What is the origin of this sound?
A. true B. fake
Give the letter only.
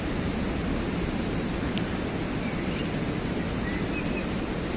A